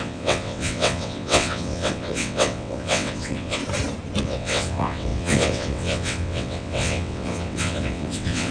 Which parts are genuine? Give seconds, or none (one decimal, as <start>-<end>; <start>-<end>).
3.6-4.2

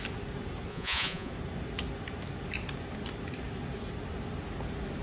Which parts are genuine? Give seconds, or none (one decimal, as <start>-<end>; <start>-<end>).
0.0-0.7; 1.3-5.0

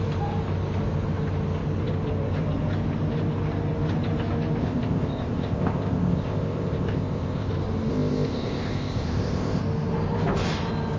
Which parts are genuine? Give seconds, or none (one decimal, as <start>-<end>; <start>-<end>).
0.0-4.6; 7.5-7.9; 9.6-11.0

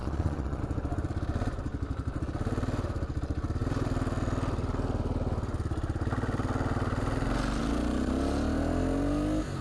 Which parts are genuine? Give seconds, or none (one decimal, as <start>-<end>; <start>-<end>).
0.6-9.6

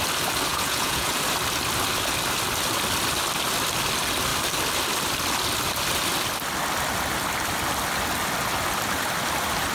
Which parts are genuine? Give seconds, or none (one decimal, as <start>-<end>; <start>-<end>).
0.0-0.5; 1.1-9.7

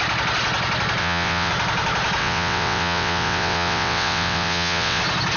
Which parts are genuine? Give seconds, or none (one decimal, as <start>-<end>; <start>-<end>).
0.0-1.0; 1.5-2.2; 5.0-5.4

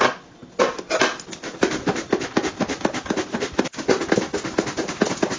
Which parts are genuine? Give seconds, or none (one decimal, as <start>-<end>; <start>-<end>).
0.0-5.4

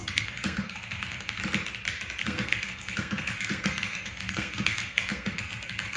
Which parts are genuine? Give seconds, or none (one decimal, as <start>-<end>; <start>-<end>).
1.4-2.2